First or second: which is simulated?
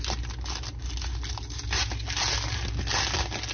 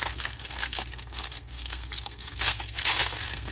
second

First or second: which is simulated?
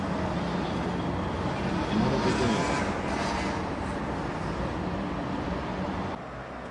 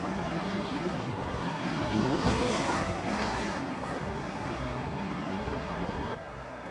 second